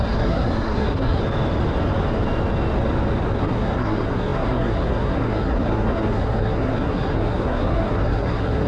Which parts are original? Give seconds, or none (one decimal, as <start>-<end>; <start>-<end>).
1.2-3.4